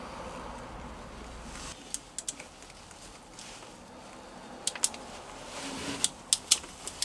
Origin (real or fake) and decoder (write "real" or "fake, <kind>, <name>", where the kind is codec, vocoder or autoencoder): real